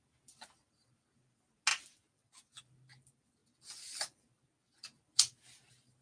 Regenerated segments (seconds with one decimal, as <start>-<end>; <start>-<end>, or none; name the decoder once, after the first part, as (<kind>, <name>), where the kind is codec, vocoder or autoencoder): none